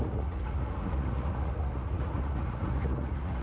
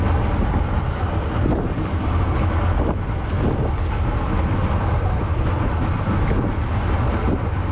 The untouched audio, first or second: second